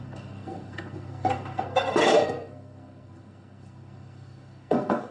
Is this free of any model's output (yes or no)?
no